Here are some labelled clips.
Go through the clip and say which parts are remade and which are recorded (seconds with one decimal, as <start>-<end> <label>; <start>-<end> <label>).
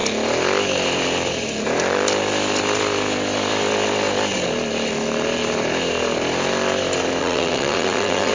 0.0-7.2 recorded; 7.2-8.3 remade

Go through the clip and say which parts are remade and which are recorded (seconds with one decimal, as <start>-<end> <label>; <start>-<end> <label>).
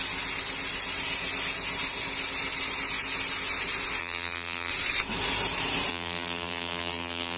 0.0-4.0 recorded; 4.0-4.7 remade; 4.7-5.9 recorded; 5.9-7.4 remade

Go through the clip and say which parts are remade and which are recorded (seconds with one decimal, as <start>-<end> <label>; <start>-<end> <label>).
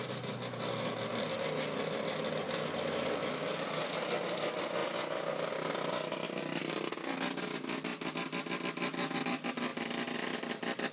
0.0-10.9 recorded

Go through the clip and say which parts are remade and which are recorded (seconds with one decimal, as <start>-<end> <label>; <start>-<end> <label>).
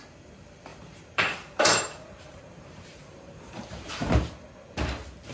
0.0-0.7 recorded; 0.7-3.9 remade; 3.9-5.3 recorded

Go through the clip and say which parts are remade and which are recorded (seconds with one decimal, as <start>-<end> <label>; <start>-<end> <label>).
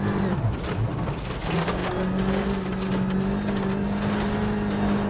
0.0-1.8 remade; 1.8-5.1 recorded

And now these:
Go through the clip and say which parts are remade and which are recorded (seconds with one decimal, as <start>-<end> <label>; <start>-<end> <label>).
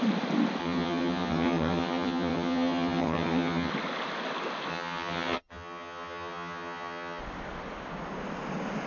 0.0-0.6 recorded; 0.6-3.7 remade; 3.7-4.7 recorded; 4.7-7.2 remade; 7.2-8.9 recorded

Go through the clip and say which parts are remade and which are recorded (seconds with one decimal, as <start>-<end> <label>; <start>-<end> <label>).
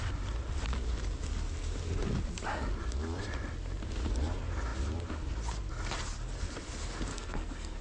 0.0-7.1 recorded; 7.1-7.8 remade